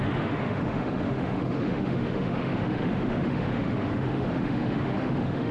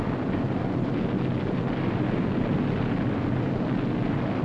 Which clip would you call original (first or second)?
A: second